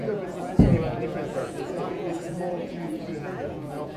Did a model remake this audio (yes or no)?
yes